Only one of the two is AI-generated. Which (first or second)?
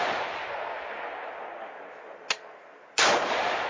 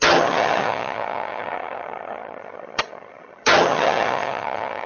second